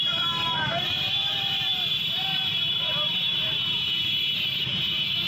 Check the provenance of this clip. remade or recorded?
remade